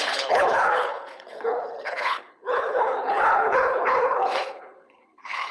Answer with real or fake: fake